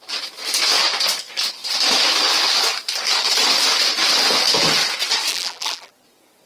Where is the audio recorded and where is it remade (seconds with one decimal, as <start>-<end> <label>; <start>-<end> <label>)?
0.0-5.3 recorded; 5.3-5.9 remade; 5.9-6.5 recorded